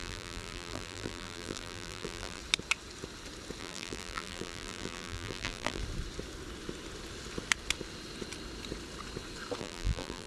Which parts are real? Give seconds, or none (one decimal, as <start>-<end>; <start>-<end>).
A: 2.4-3.6; 5.8-9.6